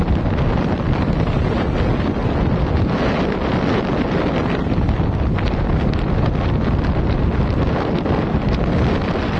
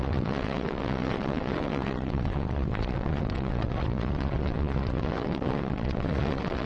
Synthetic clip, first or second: second